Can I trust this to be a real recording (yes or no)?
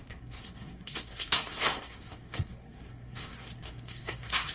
no